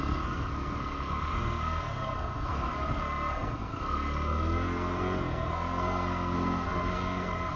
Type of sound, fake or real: fake